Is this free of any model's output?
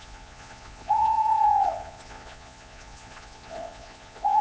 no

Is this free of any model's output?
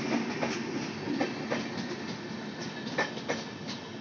yes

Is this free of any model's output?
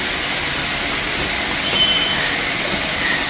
yes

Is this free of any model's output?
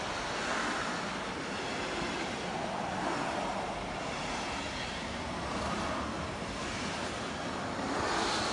yes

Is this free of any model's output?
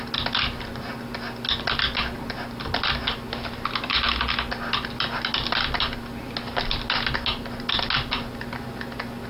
yes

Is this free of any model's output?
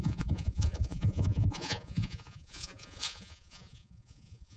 no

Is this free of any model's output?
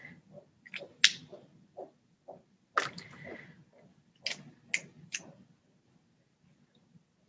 yes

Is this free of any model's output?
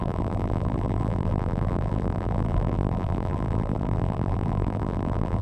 no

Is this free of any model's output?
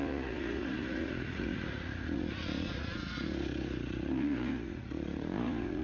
no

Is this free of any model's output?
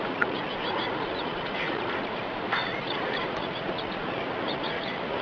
no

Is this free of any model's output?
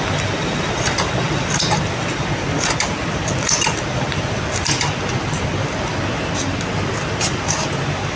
yes